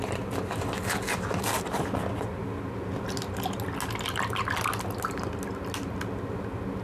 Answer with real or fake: real